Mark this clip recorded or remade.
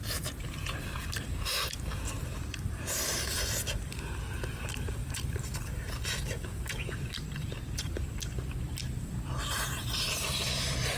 remade